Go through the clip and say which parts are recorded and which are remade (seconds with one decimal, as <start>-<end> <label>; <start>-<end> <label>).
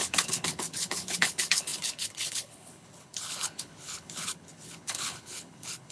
0.0-5.9 remade